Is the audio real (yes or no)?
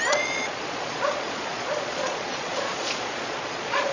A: no